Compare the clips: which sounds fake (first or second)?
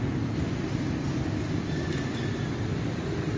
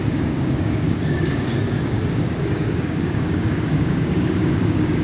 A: second